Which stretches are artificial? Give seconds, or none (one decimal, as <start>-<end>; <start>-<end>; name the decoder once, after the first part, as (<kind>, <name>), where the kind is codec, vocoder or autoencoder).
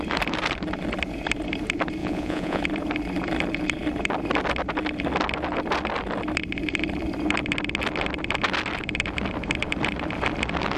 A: 2.0-2.6 (vocoder, Vocos)